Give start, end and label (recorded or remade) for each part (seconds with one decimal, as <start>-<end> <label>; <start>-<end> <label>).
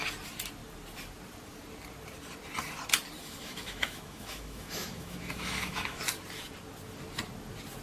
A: 0.0-3.2 recorded; 3.2-6.0 remade; 6.0-7.8 recorded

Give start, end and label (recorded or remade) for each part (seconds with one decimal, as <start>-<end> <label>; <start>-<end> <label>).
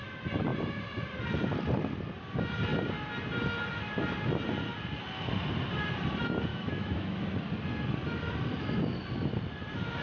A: 0.0-6.5 recorded; 6.5-7.2 remade; 7.2-10.0 recorded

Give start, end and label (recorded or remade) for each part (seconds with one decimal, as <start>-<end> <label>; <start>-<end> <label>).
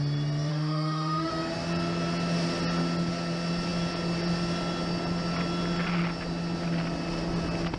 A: 0.0-0.5 recorded; 0.5-1.3 remade; 1.3-7.8 recorded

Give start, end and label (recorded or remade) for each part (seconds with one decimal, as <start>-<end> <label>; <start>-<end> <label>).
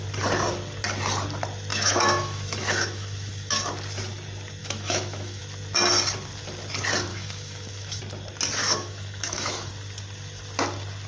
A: 0.0-1.7 recorded; 1.7-3.6 remade; 3.6-4.6 recorded; 4.6-5.4 remade; 5.4-7.1 recorded; 7.1-8.0 remade; 8.0-8.6 recorded; 8.6-9.7 remade; 9.7-11.1 recorded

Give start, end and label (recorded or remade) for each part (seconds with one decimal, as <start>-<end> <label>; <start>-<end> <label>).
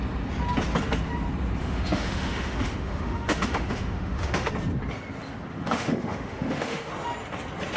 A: 0.0-1.6 recorded; 1.6-4.5 remade; 4.5-5.5 recorded; 5.5-6.9 remade; 6.9-7.8 recorded